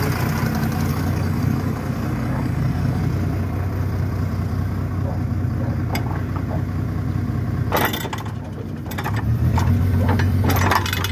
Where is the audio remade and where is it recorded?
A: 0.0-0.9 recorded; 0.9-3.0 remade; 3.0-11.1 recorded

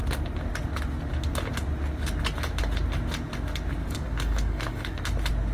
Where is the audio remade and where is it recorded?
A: 0.0-3.8 recorded; 3.8-5.0 remade; 5.0-5.5 recorded

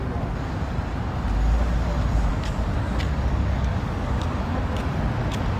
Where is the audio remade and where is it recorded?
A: 0.0-2.3 recorded; 2.3-4.9 remade; 4.9-5.6 recorded

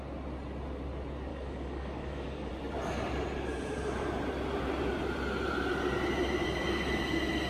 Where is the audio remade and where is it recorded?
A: 0.0-1.3 recorded; 1.3-2.5 remade; 2.5-7.5 recorded

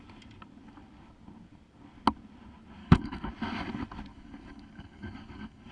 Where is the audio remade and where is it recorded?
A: 0.0-2.8 recorded; 2.8-3.3 remade; 3.3-4.1 recorded; 4.1-5.7 remade

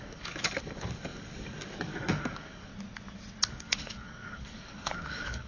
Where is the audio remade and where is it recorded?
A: 0.0-2.7 remade; 2.7-3.5 recorded; 3.5-5.5 remade